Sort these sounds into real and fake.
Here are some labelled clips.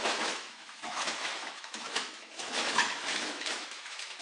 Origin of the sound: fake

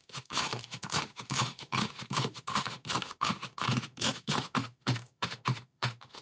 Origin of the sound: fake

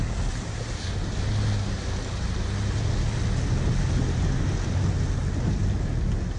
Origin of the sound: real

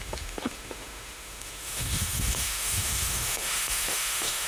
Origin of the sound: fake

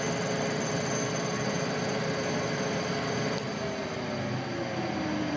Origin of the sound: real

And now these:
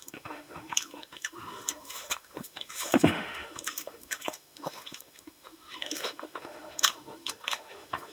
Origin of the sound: fake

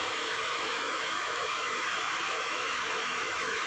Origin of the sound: fake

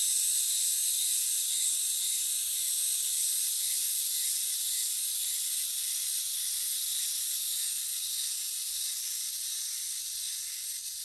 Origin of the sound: real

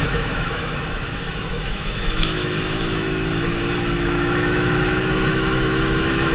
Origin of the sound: fake